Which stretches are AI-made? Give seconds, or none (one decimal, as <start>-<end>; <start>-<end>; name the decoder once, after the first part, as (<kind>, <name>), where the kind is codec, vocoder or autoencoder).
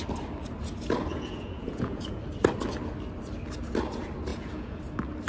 1.1-2.2 (vocoder, Vocos); 4.3-4.8